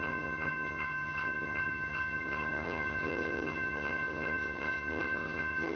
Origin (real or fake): fake